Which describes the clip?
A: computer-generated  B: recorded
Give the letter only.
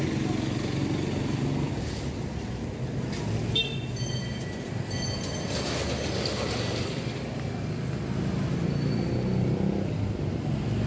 B